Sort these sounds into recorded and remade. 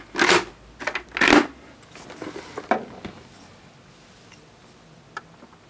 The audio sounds recorded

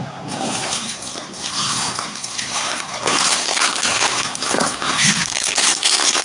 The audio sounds remade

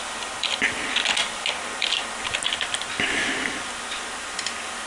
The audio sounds recorded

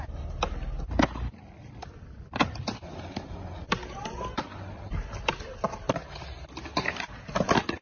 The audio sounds recorded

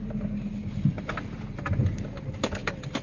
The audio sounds recorded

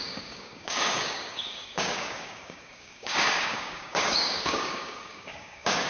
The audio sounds remade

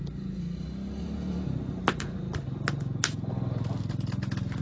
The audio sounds recorded